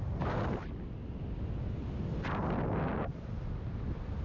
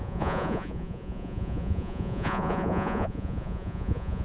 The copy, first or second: second